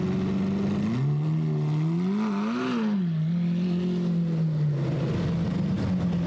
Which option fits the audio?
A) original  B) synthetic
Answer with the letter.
A